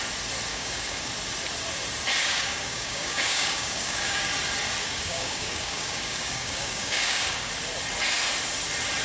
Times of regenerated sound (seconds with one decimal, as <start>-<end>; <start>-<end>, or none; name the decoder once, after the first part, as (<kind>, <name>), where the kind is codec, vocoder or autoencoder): 0.5-1.1 (codec, DAC); 2.2-4.3; 4.8-7.5